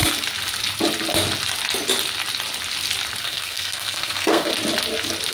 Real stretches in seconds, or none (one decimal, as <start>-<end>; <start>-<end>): 0.0-3.2; 4.5-5.3

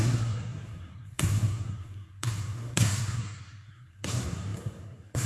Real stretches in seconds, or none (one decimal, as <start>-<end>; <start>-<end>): none

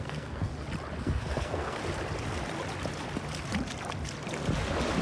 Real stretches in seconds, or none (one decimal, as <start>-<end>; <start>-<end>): 0.5-1.0; 1.8-5.0

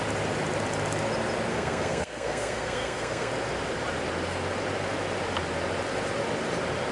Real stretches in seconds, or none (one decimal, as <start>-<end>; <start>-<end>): 0.0-1.5; 3.3-6.9

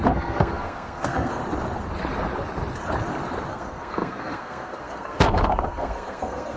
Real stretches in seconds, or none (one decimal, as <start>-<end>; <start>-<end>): 1.4-3.5

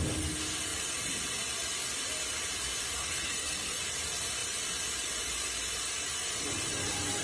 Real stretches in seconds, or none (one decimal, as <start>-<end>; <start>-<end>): 0.0-3.0; 3.8-7.2

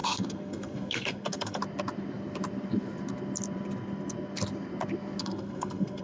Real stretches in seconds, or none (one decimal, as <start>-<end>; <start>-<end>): 1.6-5.2

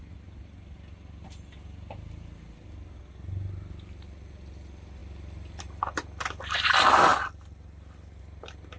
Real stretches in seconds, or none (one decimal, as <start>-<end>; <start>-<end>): 0.0-8.8